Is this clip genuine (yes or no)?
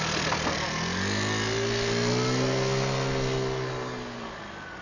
yes